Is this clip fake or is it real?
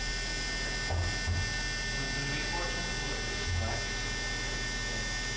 real